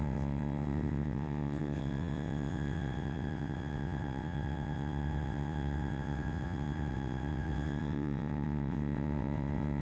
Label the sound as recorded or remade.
remade